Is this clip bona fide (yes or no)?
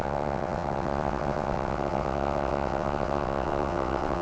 no